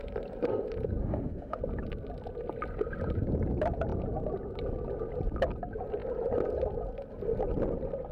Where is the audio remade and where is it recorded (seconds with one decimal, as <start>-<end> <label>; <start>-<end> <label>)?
0.0-1.0 recorded; 1.0-1.6 remade; 1.6-8.1 recorded